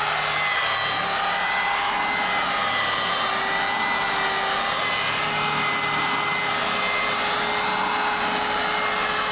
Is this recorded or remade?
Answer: recorded